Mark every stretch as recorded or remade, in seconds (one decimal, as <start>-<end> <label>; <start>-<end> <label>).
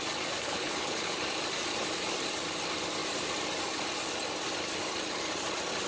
0.0-0.4 recorded; 0.4-1.2 remade; 1.2-5.9 recorded